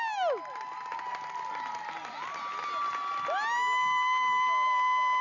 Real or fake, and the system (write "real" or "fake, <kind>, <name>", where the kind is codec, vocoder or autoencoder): real